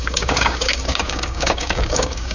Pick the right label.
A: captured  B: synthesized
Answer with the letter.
B